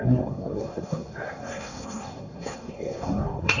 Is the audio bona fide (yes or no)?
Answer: no